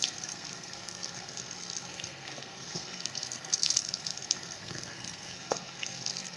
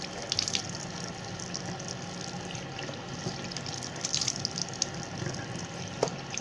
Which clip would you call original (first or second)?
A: second